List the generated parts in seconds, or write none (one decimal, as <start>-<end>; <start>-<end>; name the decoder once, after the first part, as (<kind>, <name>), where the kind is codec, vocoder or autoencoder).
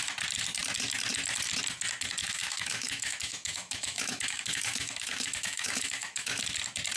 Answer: 2.2-6.4 (autoencoder, DAC-VAE)